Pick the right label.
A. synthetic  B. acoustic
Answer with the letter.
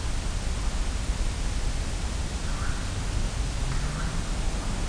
B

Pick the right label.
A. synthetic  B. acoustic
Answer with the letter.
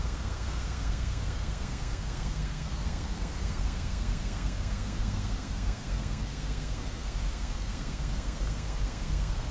A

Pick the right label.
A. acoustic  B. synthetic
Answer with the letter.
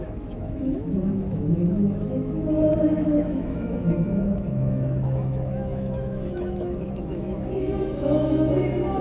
B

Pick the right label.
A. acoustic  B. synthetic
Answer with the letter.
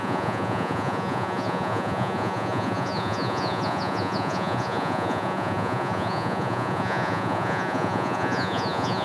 B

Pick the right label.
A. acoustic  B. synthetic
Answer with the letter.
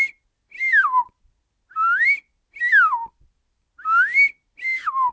A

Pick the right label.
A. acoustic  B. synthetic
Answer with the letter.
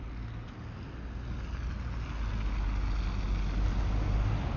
A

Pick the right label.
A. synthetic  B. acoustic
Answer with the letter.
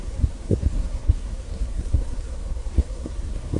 A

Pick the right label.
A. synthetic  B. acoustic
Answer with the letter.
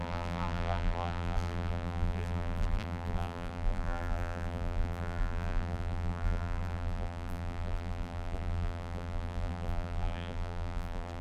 A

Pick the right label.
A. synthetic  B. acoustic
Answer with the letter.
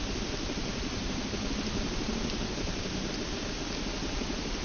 B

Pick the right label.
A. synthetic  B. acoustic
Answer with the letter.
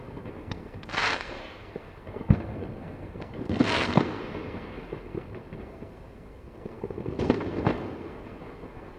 A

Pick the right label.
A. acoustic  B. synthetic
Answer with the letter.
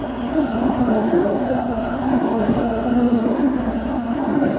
B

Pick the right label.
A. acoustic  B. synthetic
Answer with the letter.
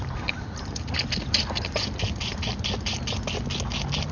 A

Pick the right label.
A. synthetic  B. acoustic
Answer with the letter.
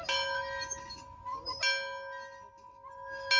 B